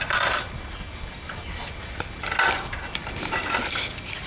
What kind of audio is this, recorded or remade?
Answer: recorded